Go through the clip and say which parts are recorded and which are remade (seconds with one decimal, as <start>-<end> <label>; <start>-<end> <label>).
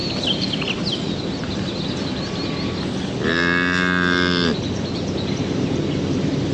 0.0-6.5 recorded